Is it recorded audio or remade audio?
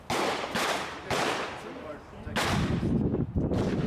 recorded